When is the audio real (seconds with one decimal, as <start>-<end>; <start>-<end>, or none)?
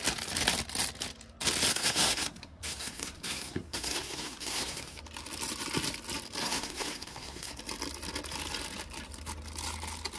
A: 0.0-1.7; 5.0-6.4; 7.6-10.2